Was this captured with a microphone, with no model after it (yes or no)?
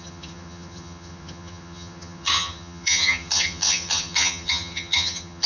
no